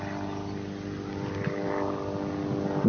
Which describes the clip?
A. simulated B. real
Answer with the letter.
B